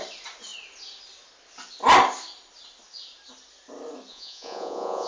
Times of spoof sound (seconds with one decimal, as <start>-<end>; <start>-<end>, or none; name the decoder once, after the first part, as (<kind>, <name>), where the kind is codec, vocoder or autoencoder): 4.1-5.1 (vocoder, Vocos)

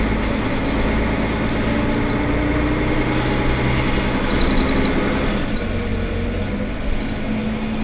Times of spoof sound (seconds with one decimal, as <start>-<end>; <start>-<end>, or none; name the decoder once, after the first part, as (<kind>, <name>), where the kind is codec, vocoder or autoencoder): none

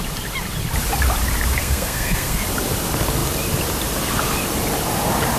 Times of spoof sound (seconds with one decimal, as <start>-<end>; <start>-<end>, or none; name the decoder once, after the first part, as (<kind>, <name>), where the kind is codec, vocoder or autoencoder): 1.6-2.4 (codec, SNAC)

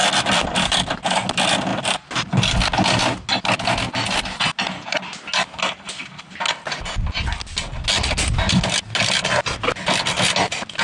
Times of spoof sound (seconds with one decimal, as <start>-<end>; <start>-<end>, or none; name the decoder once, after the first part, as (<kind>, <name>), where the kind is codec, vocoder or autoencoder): none